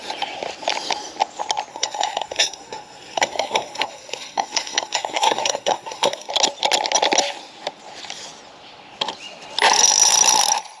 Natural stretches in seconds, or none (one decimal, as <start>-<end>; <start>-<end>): 0.0-1.7; 6.3-10.8